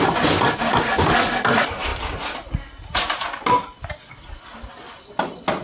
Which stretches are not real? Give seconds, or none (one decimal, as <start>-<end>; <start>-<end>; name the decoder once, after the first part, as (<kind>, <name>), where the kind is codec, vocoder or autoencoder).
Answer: none